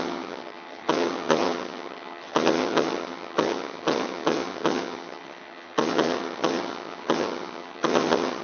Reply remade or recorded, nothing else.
remade